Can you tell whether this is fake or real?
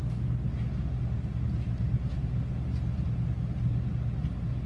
real